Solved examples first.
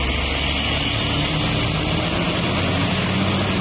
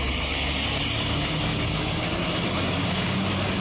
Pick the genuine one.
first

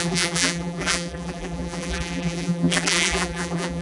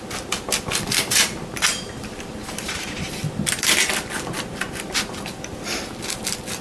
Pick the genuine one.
second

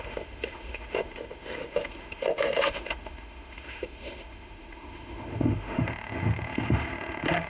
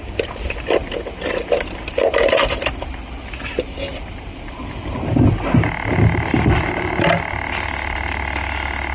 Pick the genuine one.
second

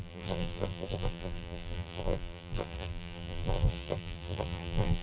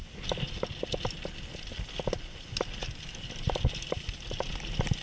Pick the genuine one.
second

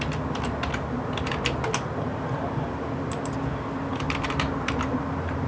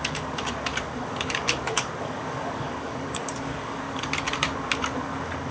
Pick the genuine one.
first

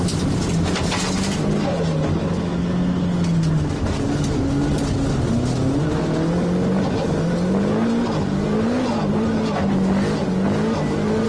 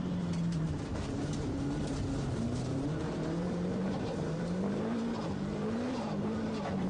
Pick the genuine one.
first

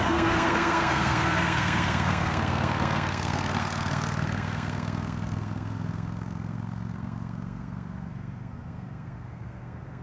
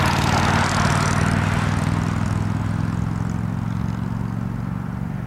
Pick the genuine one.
second